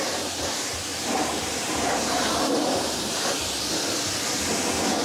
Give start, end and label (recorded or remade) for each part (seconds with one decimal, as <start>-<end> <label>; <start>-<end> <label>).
0.0-0.9 recorded; 0.9-3.4 remade; 3.4-5.0 recorded